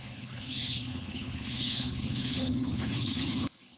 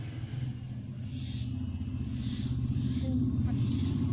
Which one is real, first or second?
second